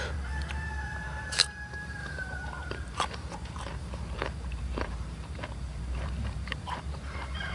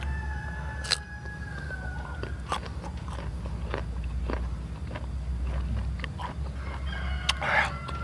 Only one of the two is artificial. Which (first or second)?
first